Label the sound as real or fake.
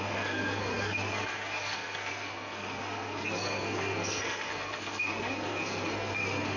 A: fake